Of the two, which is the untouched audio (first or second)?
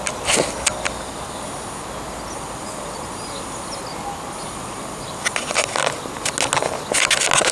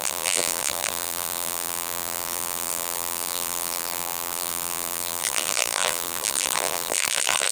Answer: first